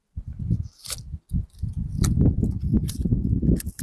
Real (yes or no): yes